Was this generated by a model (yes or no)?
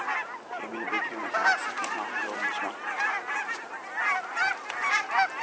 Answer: no